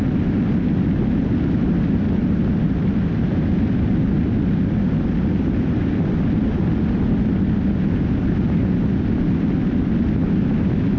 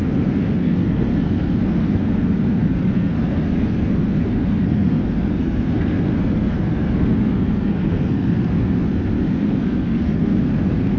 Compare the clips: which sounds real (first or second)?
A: first